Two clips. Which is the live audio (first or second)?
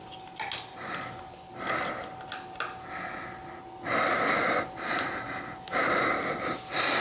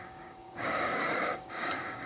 first